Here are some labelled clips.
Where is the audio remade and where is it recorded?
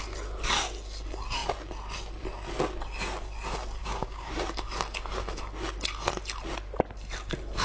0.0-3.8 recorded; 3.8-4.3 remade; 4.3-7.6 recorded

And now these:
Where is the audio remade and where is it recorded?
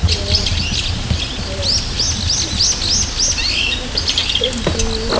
0.0-5.2 recorded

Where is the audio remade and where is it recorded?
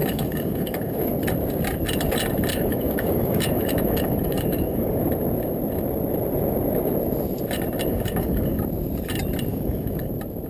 0.0-1.2 remade; 1.2-2.5 recorded; 2.5-5.0 remade; 5.0-7.9 recorded; 7.9-8.6 remade; 8.6-9.5 recorded; 9.5-10.1 remade; 10.1-10.5 recorded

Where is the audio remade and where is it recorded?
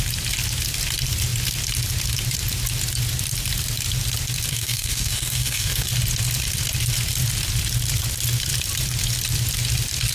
0.0-4.5 recorded; 4.5-5.9 remade; 5.9-10.1 recorded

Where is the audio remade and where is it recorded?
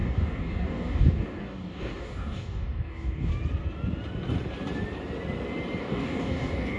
0.0-3.3 remade; 3.3-5.8 recorded; 5.8-6.8 remade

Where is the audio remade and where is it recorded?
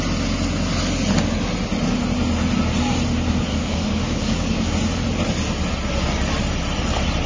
0.0-3.5 recorded; 3.5-4.7 remade; 4.7-7.3 recorded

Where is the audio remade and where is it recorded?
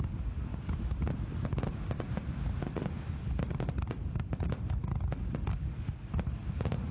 0.0-6.9 recorded